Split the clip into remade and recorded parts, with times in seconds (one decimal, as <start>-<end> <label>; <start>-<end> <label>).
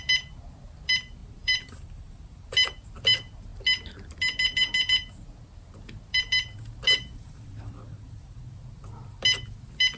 0.0-1.2 recorded; 1.2-2.5 remade; 2.5-7.1 recorded; 7.1-8.5 remade; 8.5-10.0 recorded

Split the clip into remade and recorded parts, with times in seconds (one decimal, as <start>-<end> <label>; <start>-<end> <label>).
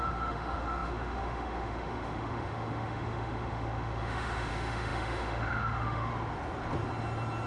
0.0-6.1 remade; 6.1-7.5 recorded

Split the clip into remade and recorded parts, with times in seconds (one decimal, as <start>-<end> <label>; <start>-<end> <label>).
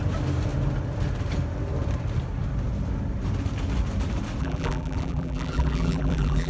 0.0-4.4 recorded; 4.4-6.5 remade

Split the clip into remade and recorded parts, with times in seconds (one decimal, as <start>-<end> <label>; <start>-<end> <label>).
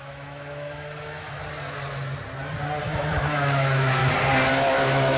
0.0-1.4 remade; 1.4-2.8 recorded; 2.8-4.0 remade; 4.0-4.5 recorded; 4.5-5.2 remade